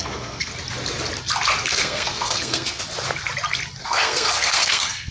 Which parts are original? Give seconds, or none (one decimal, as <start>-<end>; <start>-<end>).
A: 0.5-1.6; 2.8-3.8